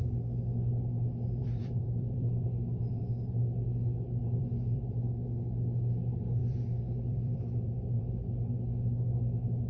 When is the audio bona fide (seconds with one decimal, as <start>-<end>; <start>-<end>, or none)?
0.0-1.4; 3.0-4.2; 4.8-6.4; 8.0-9.7